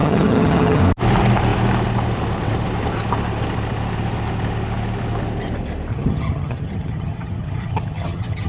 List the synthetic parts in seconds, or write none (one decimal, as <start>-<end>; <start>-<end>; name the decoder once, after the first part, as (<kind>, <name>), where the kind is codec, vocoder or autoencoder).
0.0-0.8 (vocoder, HiFi-GAN); 5.9-8.5